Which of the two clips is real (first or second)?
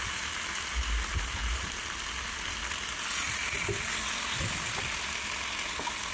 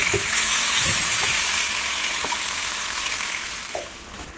first